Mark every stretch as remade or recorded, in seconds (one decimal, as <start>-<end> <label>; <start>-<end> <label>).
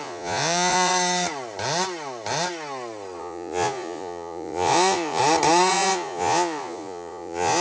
0.0-0.9 remade; 0.9-3.2 recorded; 3.2-5.2 remade; 5.2-5.7 recorded; 5.7-7.6 remade